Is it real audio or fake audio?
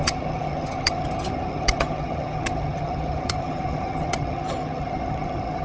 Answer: fake